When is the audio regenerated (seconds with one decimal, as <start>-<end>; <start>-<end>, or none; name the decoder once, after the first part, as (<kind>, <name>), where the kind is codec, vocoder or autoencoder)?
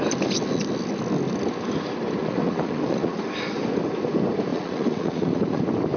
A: 2.2-3.2 (vocoder, Vocos); 4.5-5.6